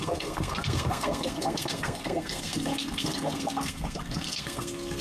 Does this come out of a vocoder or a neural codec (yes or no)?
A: yes